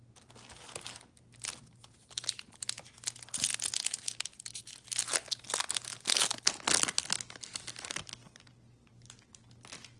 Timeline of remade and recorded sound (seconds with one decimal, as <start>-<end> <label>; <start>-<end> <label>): 0.0-10.0 recorded